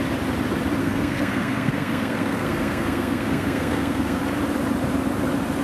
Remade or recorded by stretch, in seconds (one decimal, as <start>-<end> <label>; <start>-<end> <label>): 0.0-0.8 recorded; 0.8-4.2 remade; 4.2-5.6 recorded